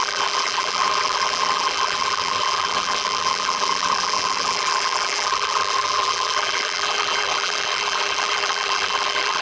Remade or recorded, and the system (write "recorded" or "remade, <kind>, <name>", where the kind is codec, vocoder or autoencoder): remade, vocoder, BigVGAN v2